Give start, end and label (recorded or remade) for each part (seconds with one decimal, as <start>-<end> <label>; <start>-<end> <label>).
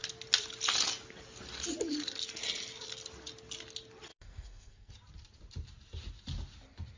0.0-4.1 recorded; 4.1-4.9 remade; 4.9-7.0 recorded